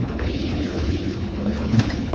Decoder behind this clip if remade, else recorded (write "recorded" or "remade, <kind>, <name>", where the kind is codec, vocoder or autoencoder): remade, codec, HILCodec